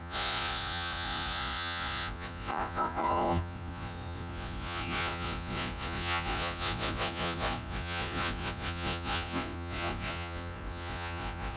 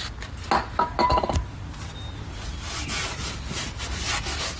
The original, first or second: second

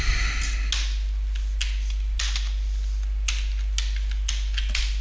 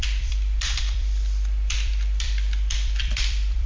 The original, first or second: first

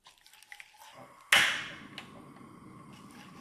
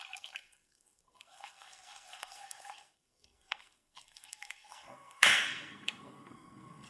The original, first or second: first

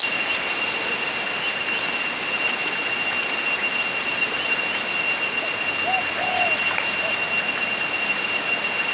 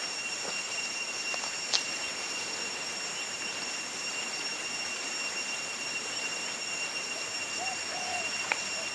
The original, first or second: first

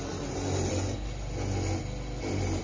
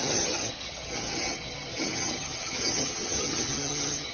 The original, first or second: first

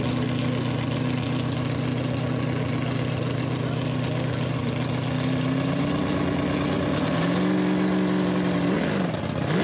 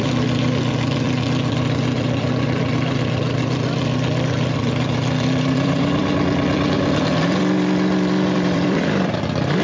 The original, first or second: first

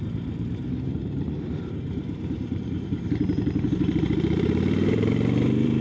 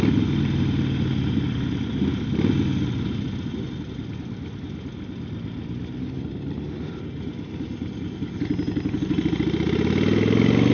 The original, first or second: second